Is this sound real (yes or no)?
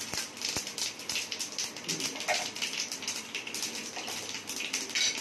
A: no